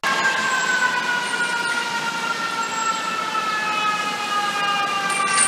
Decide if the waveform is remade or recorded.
recorded